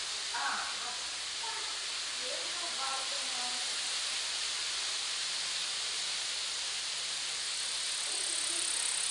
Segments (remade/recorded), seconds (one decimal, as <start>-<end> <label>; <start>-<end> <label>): 0.0-9.1 recorded